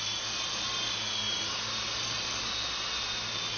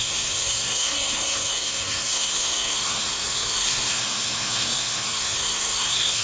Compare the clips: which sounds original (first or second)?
first